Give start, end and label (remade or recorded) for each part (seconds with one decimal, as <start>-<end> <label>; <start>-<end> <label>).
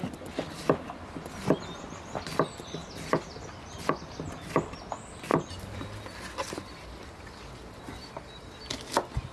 0.0-5.3 recorded; 5.3-6.5 remade; 6.5-9.3 recorded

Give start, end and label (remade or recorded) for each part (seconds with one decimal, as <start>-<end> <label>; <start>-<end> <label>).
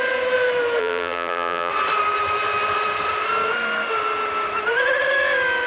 0.0-0.8 recorded; 0.8-1.7 remade; 1.7-5.7 recorded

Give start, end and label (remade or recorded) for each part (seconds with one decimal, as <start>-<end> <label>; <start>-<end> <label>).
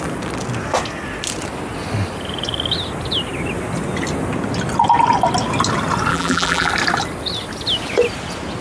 0.0-6.1 recorded; 6.1-6.7 remade; 6.7-8.6 recorded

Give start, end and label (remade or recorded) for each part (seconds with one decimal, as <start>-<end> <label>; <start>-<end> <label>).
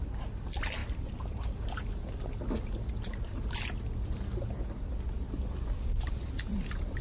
0.0-7.0 recorded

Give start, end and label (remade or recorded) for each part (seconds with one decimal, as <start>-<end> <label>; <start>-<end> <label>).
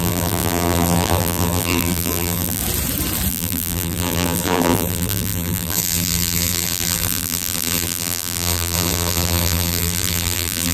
0.0-2.6 remade; 2.6-3.3 recorded; 3.3-10.7 remade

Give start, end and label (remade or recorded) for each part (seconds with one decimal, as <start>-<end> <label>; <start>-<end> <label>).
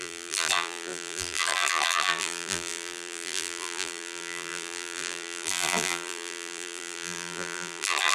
0.0-8.1 remade